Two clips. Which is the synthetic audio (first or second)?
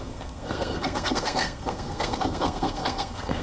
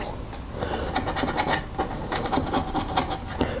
first